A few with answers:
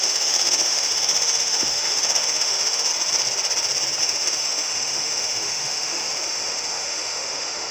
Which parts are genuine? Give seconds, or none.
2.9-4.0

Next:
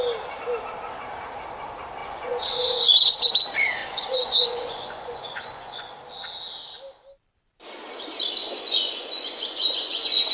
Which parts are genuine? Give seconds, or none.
0.0-2.0; 3.3-3.8; 5.9-8.4